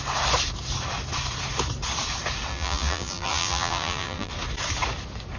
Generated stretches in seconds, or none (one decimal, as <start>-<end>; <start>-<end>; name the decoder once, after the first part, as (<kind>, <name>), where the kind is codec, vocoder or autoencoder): 2.5-4.3 (vocoder, BigVGAN v2)